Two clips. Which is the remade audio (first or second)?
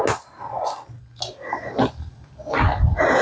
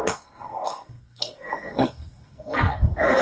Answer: second